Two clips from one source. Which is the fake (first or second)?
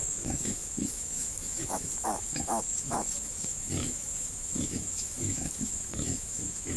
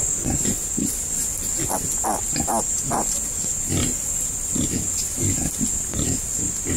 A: first